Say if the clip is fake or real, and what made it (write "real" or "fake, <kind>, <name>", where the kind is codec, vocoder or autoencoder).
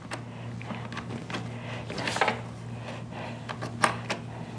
real